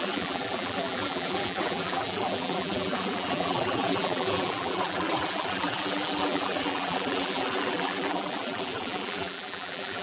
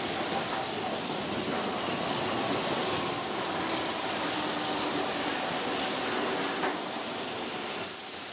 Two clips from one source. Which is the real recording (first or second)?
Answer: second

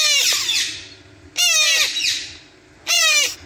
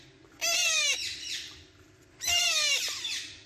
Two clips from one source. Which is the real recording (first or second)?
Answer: first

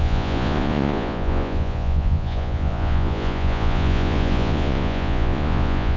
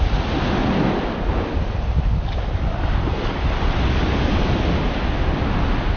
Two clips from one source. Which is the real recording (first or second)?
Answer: second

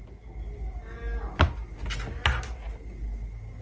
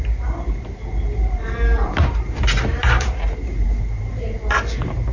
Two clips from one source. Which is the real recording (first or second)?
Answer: first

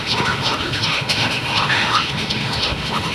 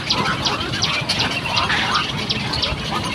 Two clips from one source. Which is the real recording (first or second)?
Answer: second